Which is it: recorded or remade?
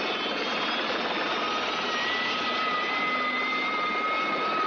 recorded